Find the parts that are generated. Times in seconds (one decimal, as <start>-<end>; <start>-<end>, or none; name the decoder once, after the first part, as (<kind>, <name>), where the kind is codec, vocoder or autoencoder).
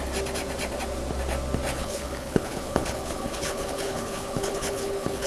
1.8-5.3 (codec, HILCodec)